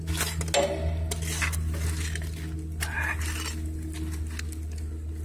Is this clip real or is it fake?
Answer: real